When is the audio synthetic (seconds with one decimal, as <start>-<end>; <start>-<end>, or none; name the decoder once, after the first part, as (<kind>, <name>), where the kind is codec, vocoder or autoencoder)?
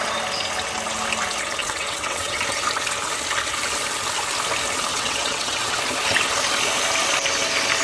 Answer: 1.6-2.4 (vocoder, WaveNeXt); 4.9-5.8